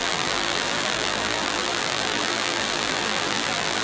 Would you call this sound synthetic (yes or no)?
yes